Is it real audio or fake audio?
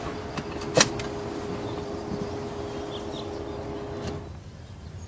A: real